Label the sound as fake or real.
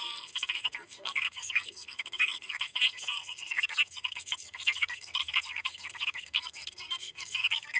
fake